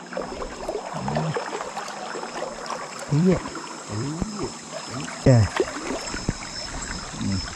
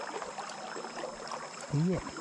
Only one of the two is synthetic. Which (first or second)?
first